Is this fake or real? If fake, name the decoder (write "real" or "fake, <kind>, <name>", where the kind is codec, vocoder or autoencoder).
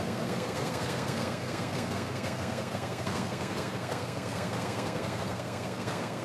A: fake, codec, SNAC